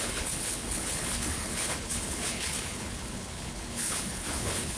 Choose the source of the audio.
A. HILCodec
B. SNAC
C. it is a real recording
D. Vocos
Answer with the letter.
A